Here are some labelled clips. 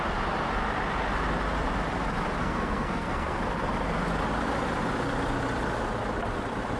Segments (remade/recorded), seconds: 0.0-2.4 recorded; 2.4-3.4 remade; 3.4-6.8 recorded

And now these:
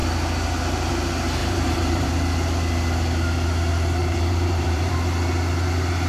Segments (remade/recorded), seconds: 0.0-1.4 recorded; 1.4-2.1 remade; 2.1-4.0 recorded; 4.0-4.9 remade; 4.9-6.1 recorded

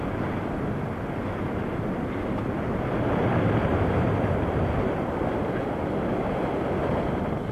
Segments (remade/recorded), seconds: 0.0-3.7 recorded; 3.7-4.4 remade; 4.4-7.5 recorded

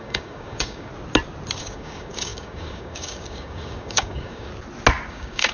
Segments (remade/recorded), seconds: 0.0-0.9 remade; 0.9-1.6 recorded; 1.6-4.5 remade; 4.5-5.1 recorded; 5.1-5.5 remade

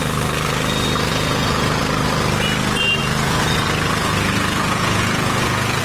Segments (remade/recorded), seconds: 0.0-1.1 recorded; 1.1-1.8 remade; 1.8-3.0 recorded; 3.0-5.8 remade